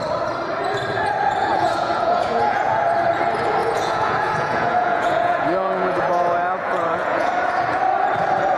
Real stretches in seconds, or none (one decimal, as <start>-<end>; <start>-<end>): 0.0-1.4; 2.8-3.6; 7.3-8.6